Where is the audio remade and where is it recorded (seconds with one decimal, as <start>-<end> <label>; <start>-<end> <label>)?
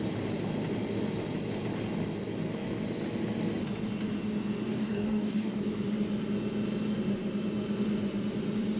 0.0-4.7 recorded; 4.7-5.6 remade; 5.6-8.8 recorded